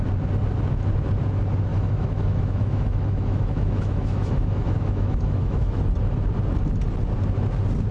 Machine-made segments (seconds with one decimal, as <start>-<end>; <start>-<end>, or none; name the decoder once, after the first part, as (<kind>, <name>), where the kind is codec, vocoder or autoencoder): 1.7-5.8 (autoencoder, DAC-VAE)